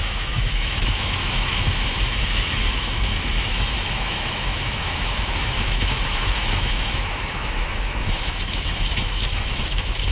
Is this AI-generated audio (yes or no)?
yes